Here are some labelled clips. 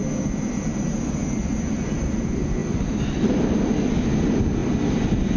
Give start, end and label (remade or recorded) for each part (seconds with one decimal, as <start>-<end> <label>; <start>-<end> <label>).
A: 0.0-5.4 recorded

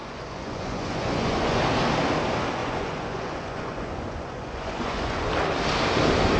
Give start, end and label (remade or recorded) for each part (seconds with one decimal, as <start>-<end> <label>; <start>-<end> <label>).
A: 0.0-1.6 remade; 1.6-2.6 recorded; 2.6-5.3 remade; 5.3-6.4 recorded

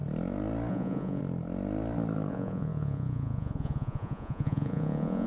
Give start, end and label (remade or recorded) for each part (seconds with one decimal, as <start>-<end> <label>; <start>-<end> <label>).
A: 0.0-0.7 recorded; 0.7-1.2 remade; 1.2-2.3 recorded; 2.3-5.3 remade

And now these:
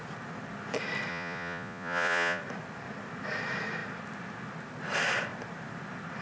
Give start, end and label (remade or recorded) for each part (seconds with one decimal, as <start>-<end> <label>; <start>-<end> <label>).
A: 0.0-1.1 recorded; 1.1-2.4 remade; 2.4-6.2 recorded

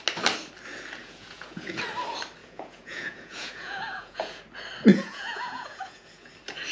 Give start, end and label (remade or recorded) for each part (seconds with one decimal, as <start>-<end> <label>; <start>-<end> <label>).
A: 0.0-1.0 recorded; 1.0-1.8 remade; 1.8-2.4 recorded; 2.4-4.4 remade; 4.4-4.9 recorded; 4.9-6.3 remade; 6.3-6.7 recorded

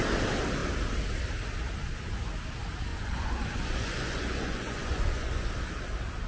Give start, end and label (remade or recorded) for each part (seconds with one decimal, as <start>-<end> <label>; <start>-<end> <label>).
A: 0.0-2.9 recorded; 2.9-5.5 remade; 5.5-6.3 recorded

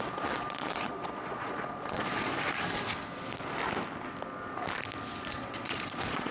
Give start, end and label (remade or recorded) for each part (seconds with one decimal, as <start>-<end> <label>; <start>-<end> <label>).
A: 0.0-2.3 remade; 2.3-5.3 recorded; 5.3-6.3 remade